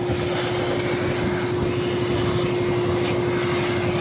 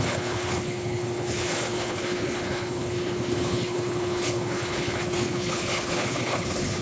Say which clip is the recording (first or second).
first